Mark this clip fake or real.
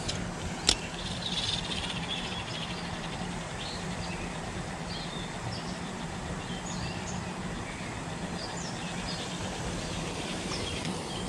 real